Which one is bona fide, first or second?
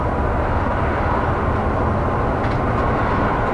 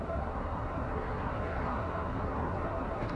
first